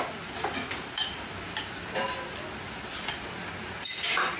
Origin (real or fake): real